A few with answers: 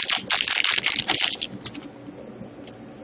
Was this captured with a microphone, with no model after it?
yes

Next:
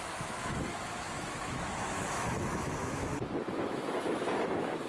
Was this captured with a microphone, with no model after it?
no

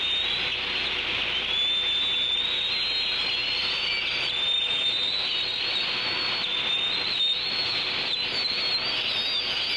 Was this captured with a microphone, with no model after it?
yes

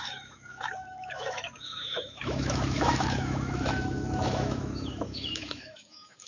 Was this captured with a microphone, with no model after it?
no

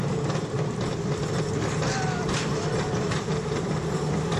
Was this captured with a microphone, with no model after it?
yes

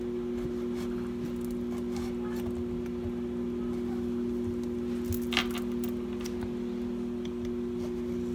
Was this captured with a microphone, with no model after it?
yes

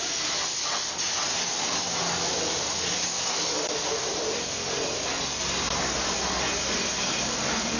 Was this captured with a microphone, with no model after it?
yes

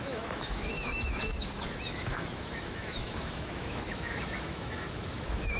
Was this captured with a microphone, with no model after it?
no